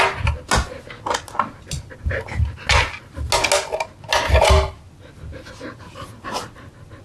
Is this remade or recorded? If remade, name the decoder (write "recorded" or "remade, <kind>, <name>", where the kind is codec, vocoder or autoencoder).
recorded